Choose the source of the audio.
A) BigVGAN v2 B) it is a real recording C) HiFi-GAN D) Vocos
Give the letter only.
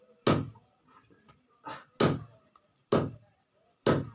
B